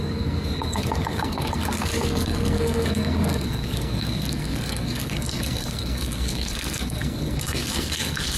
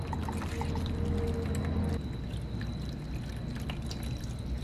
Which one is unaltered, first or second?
second